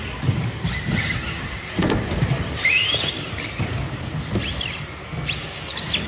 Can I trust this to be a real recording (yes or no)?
yes